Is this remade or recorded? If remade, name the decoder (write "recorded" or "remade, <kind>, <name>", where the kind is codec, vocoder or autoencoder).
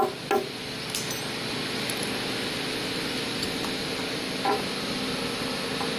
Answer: recorded